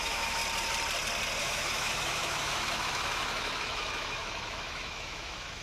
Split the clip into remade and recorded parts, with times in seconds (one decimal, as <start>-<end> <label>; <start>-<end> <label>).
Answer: 0.0-0.4 remade; 0.4-1.4 recorded; 1.4-5.6 remade